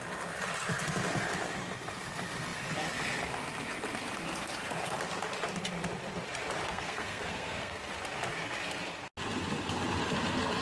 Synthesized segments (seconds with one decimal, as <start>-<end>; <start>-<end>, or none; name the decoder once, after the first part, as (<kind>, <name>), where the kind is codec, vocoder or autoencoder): 6.7-7.9 (codec, SNAC)